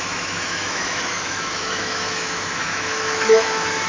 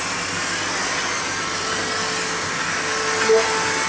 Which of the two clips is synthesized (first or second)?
first